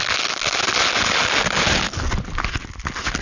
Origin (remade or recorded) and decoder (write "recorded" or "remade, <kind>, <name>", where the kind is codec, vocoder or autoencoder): recorded